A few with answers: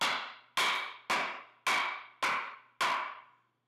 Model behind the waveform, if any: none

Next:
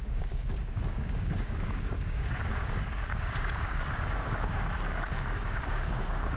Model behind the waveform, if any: codec, DAC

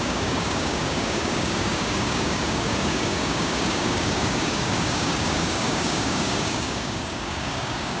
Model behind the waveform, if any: codec, DAC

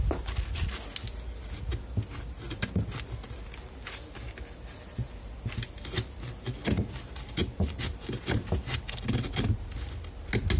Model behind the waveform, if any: none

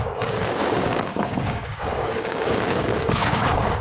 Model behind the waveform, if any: codec, DAC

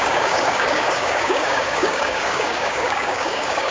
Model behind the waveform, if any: codec, DAC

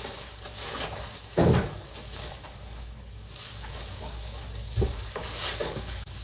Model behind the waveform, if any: codec, DAC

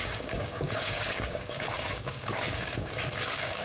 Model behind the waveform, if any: codec, DAC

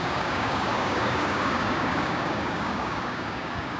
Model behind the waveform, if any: codec, DAC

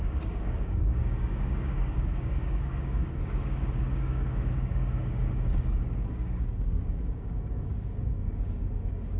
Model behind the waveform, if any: codec, DAC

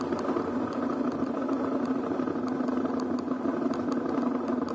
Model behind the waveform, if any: none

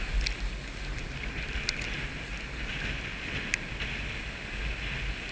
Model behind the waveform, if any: none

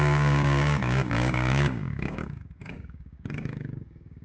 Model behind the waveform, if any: codec, DAC